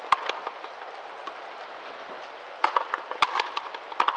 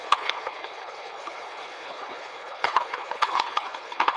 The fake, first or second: second